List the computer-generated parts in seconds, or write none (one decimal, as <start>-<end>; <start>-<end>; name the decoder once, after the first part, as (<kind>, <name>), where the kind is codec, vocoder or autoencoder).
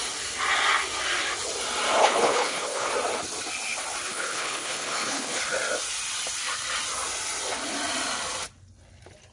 2.0-2.9 (codec, HILCodec); 4.1-5.4